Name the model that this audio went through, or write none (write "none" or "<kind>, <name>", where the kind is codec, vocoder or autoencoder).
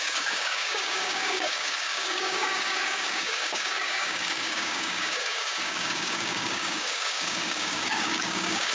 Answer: codec, DAC